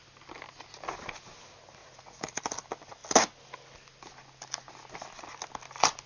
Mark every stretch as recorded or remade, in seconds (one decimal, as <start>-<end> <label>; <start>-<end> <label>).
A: 0.0-1.8 recorded; 1.8-2.4 remade; 2.4-6.1 recorded